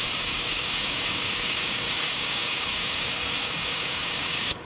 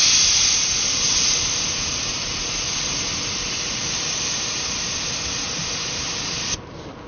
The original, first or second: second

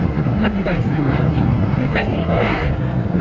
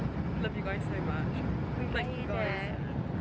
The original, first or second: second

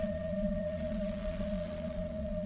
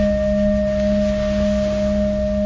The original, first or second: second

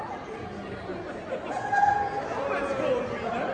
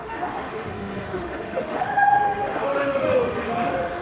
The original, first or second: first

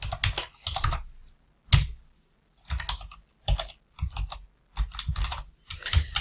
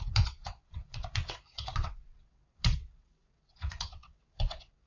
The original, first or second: first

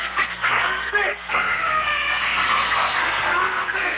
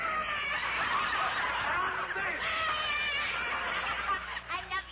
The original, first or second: second